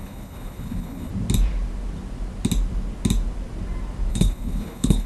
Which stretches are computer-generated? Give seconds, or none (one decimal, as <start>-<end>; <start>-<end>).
0.0-1.1; 4.1-5.1